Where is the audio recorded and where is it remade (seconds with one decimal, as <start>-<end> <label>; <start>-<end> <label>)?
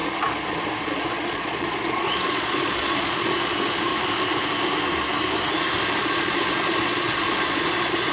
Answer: 0.0-0.9 recorded; 0.9-3.9 remade; 3.9-6.0 recorded; 6.0-8.1 remade